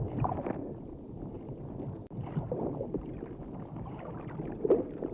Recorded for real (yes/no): yes